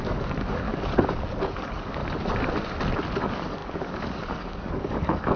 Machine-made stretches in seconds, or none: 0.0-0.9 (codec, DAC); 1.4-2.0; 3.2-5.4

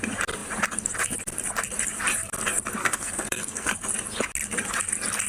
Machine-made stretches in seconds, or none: 2.8-3.7 (codec, SNAC)

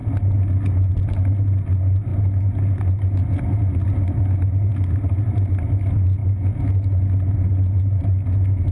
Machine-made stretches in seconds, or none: none